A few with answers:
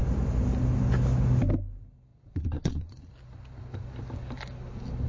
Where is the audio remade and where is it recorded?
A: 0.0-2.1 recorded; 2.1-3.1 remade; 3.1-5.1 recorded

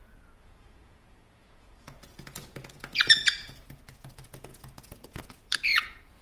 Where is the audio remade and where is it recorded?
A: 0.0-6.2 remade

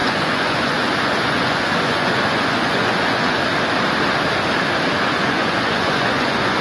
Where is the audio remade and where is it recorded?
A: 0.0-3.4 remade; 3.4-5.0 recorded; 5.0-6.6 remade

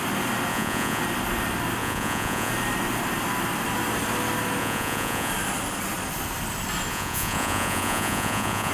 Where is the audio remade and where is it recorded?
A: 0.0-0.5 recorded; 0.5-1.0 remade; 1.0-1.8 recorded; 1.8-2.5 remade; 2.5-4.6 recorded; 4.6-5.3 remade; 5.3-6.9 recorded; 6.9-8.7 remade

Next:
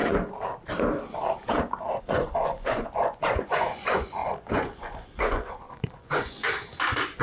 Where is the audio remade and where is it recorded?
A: 0.0-2.0 recorded; 2.0-7.2 remade

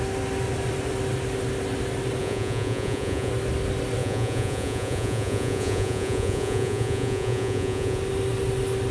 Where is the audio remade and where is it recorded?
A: 0.0-2.2 recorded; 2.2-3.3 remade; 3.3-4.0 recorded; 4.0-8.0 remade; 8.0-8.9 recorded

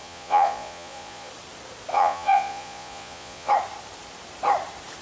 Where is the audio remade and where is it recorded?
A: 0.0-1.3 remade; 1.3-1.9 recorded; 1.9-3.5 remade; 3.5-5.0 recorded